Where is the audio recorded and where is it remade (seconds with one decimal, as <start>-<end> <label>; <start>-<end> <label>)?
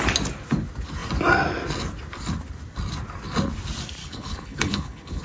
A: 0.0-4.0 recorded; 4.0-5.2 remade